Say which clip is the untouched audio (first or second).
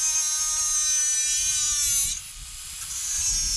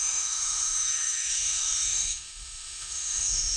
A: first